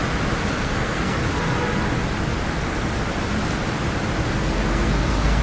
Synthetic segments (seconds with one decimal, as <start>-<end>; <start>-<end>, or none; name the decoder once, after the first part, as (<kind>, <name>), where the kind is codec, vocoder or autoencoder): 0.5-1.2 (codec, SNAC); 4.4-5.4